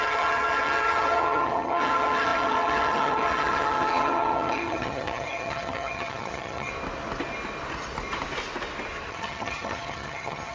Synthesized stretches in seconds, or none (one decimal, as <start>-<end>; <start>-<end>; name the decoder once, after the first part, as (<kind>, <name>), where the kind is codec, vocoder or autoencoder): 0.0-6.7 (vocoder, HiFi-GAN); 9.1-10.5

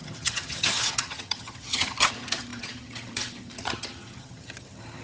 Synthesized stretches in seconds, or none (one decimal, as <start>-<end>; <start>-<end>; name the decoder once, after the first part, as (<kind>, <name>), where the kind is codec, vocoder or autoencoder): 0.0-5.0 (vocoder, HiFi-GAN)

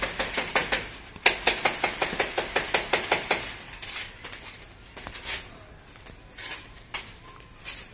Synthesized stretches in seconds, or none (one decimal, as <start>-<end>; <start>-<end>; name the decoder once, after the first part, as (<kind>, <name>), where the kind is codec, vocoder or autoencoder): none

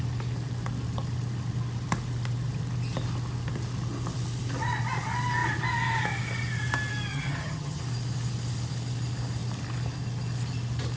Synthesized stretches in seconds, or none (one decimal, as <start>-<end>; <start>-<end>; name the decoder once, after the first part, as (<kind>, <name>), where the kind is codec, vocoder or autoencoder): 7.1-7.8 (vocoder, HiFi-GAN)